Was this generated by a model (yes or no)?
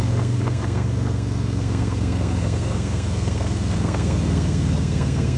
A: yes